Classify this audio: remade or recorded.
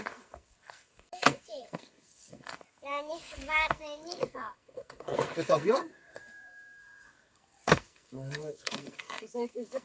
remade